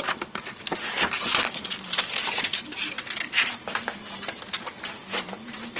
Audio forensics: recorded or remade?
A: recorded